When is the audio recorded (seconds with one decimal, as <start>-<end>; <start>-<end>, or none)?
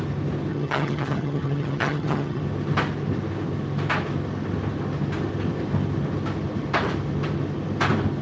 0.0-0.5; 2.4-8.2